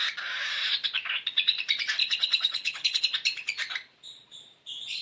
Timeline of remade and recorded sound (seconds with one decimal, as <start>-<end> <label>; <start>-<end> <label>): 0.0-2.0 recorded; 2.0-3.0 remade; 3.0-5.0 recorded